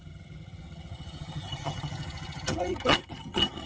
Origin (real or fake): fake